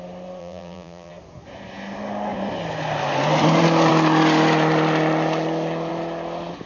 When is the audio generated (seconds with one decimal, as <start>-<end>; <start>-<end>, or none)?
0.4-1.1